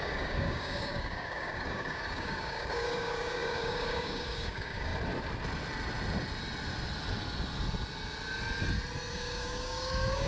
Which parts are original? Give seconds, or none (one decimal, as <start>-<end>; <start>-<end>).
4.9-9.1